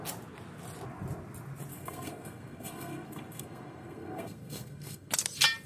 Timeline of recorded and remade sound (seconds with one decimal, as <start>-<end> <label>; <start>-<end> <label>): 0.0-1.7 recorded; 1.7-5.1 remade; 5.1-5.7 recorded